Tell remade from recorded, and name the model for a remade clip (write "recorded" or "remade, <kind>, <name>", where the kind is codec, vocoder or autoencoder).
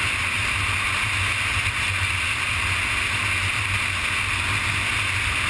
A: recorded